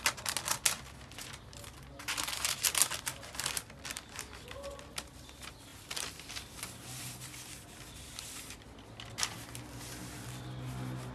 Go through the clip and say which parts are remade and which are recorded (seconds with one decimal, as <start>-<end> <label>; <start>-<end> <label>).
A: 0.0-11.1 recorded